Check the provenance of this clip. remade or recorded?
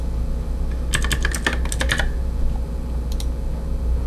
recorded